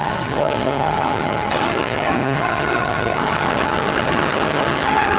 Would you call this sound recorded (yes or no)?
no